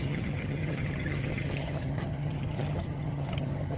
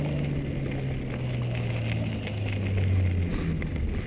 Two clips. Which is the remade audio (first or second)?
first